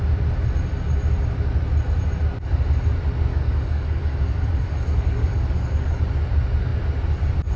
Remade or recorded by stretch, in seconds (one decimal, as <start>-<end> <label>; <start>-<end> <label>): 0.0-3.3 recorded; 3.3-6.0 remade; 6.0-7.6 recorded